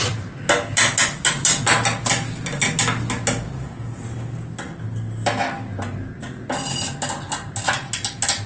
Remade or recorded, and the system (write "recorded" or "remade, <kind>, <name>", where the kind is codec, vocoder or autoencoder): recorded